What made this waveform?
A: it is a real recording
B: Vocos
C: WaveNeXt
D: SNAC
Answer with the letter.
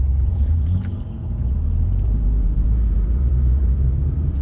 B